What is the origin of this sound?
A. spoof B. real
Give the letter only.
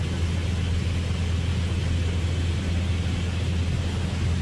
B